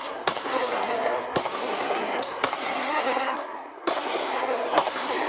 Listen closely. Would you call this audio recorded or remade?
remade